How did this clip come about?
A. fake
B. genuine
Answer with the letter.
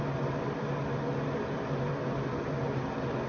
B